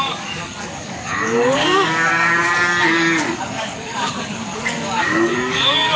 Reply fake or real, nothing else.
fake